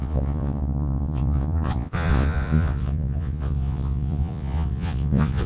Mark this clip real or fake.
fake